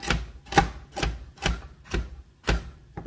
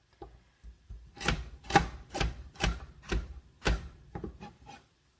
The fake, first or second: second